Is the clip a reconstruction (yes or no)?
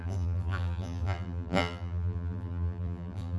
yes